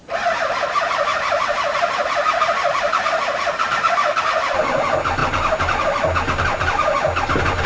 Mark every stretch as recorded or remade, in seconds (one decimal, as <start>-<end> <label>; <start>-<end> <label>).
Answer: 0.0-2.1 remade; 2.1-7.7 recorded